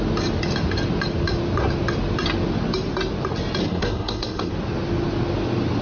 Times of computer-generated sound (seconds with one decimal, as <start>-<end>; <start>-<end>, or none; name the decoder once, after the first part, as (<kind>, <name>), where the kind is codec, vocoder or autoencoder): 3.6-4.5 (codec, SNAC)